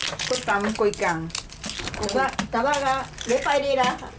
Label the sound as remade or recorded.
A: recorded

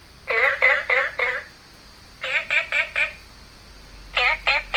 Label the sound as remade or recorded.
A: recorded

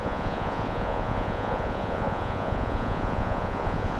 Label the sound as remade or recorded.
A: remade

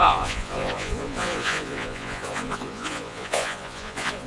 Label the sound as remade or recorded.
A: remade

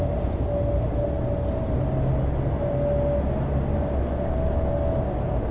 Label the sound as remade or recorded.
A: recorded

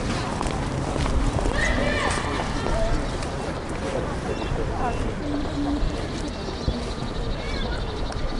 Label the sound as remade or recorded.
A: recorded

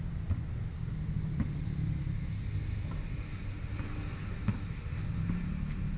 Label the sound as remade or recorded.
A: recorded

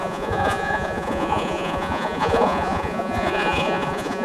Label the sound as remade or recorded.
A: remade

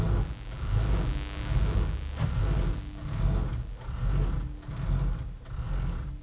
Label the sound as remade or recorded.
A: recorded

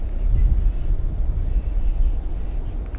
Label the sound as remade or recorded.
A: recorded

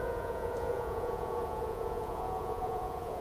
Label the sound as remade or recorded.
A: remade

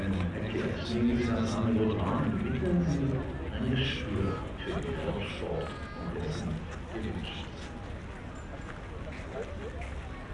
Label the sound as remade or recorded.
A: recorded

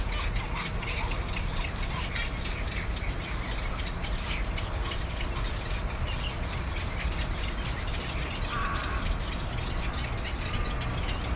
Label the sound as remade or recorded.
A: recorded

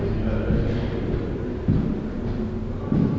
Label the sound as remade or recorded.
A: recorded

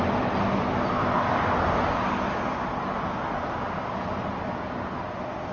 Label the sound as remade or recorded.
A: recorded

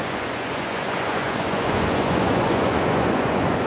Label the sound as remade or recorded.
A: remade